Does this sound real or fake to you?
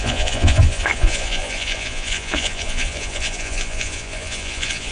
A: fake